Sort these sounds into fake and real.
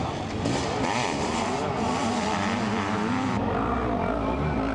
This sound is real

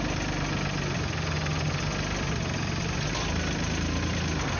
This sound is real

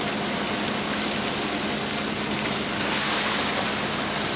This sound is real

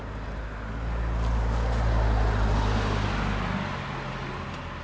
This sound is real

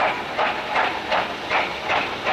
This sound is real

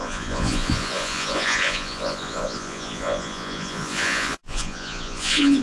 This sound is fake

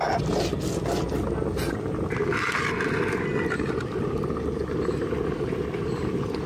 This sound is real